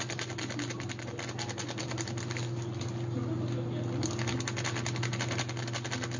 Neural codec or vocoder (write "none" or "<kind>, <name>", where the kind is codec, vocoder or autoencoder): none